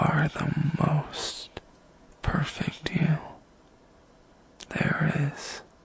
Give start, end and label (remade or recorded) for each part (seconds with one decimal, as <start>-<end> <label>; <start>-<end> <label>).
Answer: 0.0-1.2 recorded; 1.2-2.6 remade; 2.6-5.8 recorded